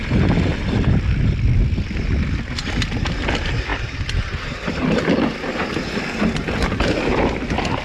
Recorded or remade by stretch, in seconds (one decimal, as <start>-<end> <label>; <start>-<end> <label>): 0.0-7.8 recorded